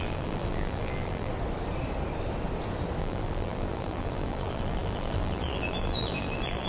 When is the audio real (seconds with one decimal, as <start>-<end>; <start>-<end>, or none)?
1.3-3.0